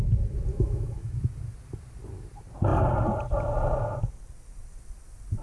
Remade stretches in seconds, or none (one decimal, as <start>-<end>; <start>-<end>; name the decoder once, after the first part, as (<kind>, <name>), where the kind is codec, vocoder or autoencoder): 0.5-1.2 (autoencoder, DAC-VAE)